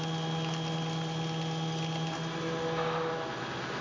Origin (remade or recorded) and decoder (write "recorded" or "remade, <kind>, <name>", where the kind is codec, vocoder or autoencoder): recorded